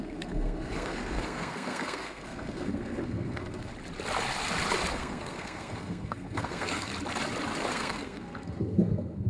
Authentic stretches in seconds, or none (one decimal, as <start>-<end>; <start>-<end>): 3.7-4.9; 6.9-7.7

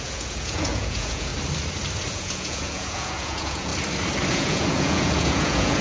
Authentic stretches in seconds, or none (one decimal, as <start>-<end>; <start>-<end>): 1.3-2.1; 3.7-4.3

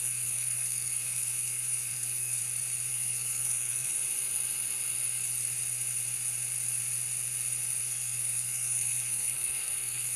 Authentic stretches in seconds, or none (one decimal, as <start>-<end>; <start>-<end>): 2.4-2.9; 3.9-7.8